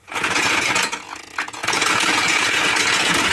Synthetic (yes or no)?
yes